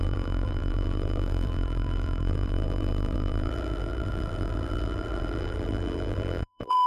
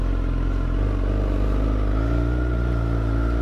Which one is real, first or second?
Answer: second